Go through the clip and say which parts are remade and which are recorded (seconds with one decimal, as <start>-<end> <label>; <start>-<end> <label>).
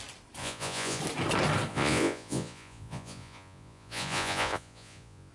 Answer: 0.0-0.4 recorded; 0.4-1.0 remade; 1.0-1.7 recorded; 1.7-5.3 remade